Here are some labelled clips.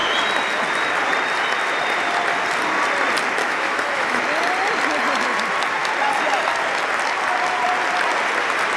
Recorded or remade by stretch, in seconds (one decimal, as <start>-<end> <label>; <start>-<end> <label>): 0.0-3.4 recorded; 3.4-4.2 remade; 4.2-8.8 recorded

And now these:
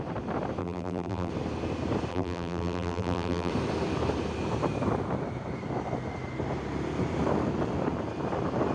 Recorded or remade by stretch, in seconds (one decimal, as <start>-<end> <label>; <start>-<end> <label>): 0.0-0.6 recorded; 0.6-1.3 remade; 1.3-2.1 recorded; 2.1-3.5 remade; 3.5-8.7 recorded

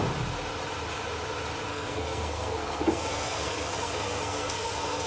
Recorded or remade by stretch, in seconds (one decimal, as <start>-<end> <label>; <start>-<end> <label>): 0.0-1.7 recorded; 1.7-5.1 remade

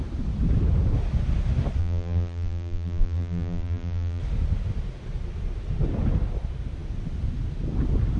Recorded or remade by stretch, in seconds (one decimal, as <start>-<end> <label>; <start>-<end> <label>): 0.0-1.8 recorded; 1.8-4.2 remade; 4.2-8.2 recorded

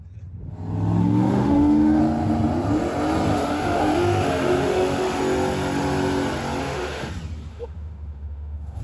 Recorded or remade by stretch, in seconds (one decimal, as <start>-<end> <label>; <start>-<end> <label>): 0.0-1.0 recorded; 1.0-2.0 remade; 2.0-3.3 recorded; 3.3-5.2 remade; 5.2-6.6 recorded; 6.6-7.1 remade; 7.1-7.5 recorded; 7.5-8.8 remade

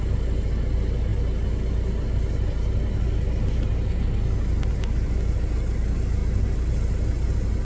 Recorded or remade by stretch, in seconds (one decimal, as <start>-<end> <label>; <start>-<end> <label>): 0.0-7.6 recorded